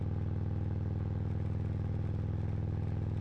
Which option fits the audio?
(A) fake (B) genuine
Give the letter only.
B